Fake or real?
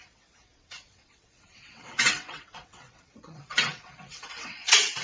fake